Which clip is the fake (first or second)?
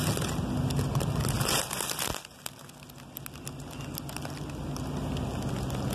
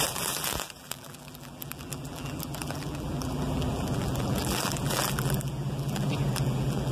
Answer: second